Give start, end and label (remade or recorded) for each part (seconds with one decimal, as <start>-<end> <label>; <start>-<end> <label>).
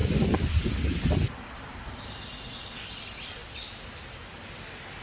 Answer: 0.0-5.0 recorded